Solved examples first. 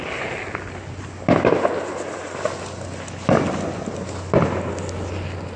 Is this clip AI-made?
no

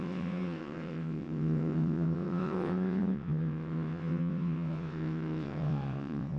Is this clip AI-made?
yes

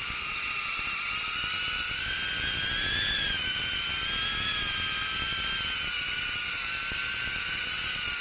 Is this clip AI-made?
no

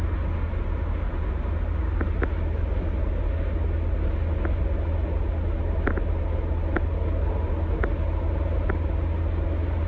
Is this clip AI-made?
no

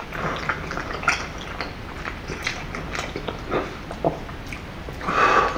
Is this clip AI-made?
no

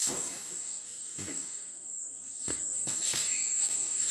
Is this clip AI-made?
yes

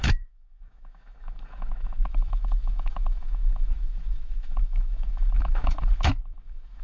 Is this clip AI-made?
yes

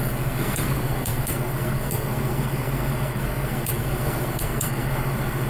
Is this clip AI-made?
yes